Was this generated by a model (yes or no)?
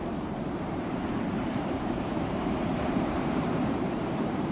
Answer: yes